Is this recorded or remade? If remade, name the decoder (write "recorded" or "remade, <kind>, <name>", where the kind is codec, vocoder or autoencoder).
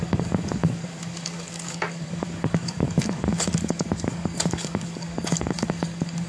remade, codec, DAC